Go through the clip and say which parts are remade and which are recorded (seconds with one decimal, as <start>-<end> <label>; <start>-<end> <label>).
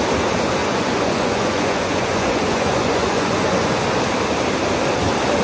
0.0-0.6 recorded; 0.6-3.8 remade; 3.8-5.4 recorded